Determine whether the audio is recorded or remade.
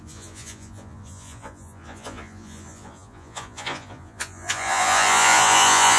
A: remade